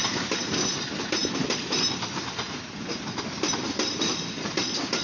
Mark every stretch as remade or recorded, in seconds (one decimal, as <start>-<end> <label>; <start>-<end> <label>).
0.0-5.0 recorded